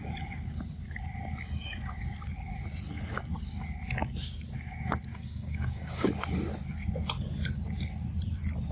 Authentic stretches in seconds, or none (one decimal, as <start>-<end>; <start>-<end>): 0.0-5.1; 6.1-8.7

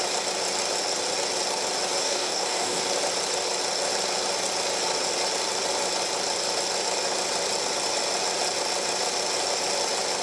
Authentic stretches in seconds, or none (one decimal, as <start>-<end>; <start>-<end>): 0.0-2.0; 2.8-10.2

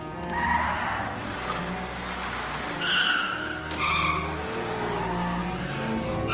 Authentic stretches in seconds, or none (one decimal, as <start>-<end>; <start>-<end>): 0.0-6.3

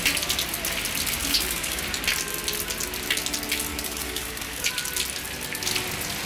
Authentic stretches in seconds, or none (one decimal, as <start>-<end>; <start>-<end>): 0.0-1.2; 1.8-3.7; 4.7-6.3

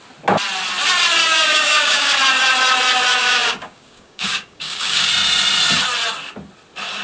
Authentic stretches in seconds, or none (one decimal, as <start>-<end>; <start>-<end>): 0.0-1.2; 2.2-3.1; 5.1-7.0

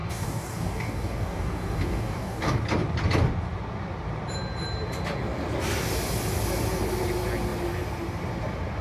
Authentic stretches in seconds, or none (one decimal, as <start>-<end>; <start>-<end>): 2.6-8.8